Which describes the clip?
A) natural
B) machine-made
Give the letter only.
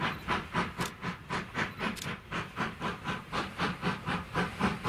B